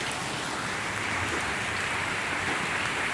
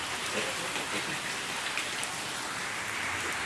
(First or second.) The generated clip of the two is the first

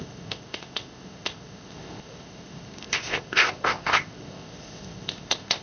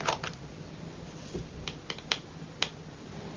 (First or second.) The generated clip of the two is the first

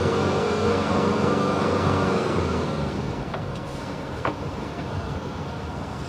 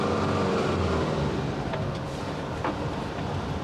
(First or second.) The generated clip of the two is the first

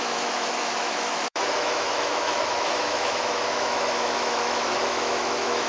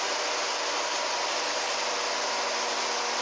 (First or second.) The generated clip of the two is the first